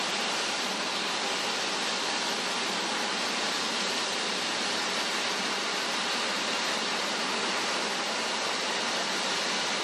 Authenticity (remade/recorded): recorded